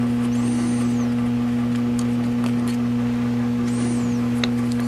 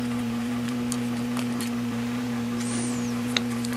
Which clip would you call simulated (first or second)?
second